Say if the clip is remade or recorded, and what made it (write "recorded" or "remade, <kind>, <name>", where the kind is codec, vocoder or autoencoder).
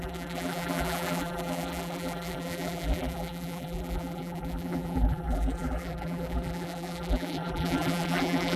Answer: remade, vocoder, BigVGAN v2